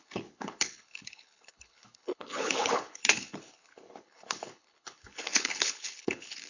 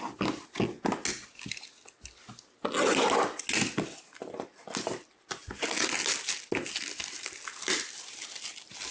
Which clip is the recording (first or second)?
second